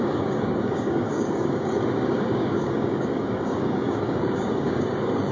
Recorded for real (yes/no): no